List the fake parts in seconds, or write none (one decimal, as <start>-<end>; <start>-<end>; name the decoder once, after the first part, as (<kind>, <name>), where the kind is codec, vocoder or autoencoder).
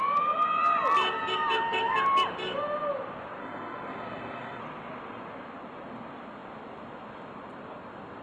3.4-4.6 (codec, SNAC)